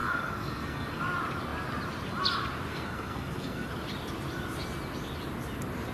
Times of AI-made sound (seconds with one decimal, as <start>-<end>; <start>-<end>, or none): 0.0-1.0; 2.7-3.7

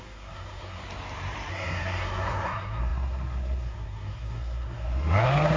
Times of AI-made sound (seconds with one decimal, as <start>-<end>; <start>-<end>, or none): 0.0-0.8; 1.5-5.6

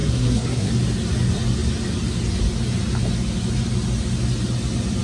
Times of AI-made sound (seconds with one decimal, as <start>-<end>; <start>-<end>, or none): 0.0-0.7